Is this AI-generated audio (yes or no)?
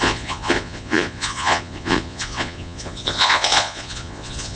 yes